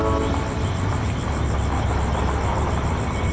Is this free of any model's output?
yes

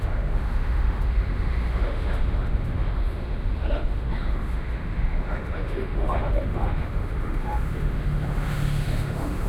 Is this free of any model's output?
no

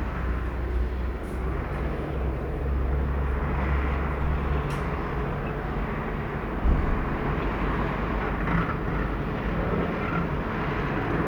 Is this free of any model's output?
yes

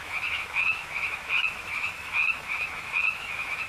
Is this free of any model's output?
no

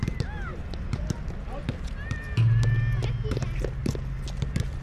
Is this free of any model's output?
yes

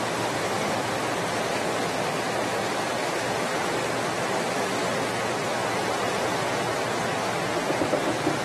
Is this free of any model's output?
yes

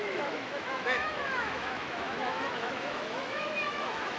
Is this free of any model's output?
no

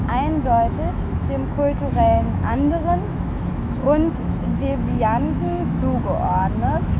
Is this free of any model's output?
no